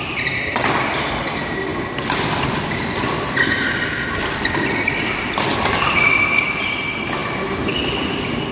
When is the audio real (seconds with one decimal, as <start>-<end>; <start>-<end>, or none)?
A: 0.0-8.5